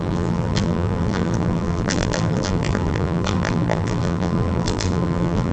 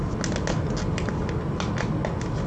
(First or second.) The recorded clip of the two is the second